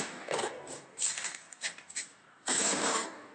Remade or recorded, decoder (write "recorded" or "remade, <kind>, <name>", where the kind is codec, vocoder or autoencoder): remade, codec, DAC